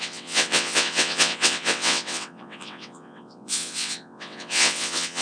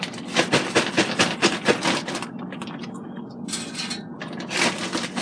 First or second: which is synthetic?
first